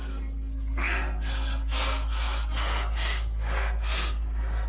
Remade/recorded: remade